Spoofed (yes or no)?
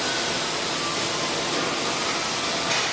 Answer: no